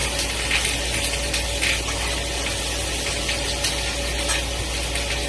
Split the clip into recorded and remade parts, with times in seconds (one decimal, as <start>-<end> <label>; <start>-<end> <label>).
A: 0.0-5.3 recorded